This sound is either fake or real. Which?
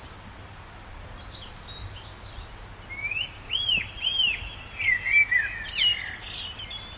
real